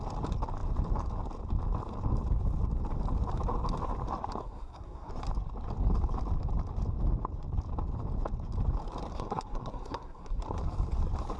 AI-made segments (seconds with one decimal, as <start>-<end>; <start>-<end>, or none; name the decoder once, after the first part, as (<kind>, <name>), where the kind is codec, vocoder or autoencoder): 4.4-5.1 (codec, SNAC); 9.1-10.4